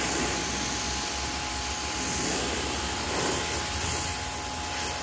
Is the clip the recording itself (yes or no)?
yes